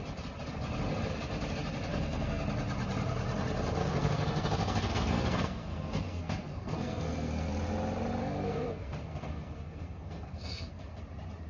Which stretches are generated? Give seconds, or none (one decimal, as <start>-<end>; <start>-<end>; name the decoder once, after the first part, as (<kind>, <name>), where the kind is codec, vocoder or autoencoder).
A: 1.9-2.4 (codec, SNAC); 3.8-7.5; 8.2-11.0